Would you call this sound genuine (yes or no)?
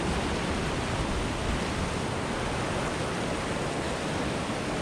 yes